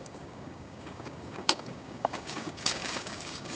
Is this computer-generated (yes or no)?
yes